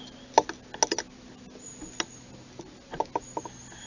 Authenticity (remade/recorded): recorded